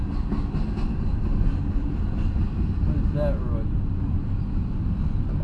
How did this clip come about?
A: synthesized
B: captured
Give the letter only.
B